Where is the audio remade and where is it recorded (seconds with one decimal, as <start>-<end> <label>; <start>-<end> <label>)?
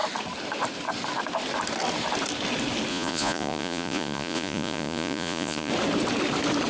0.0-2.9 recorded; 2.9-5.7 remade; 5.7-6.7 recorded